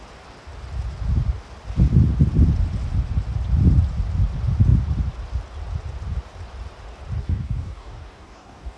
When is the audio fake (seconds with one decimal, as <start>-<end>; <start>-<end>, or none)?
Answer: 7.2-8.8